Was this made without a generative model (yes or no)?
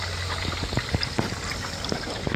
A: yes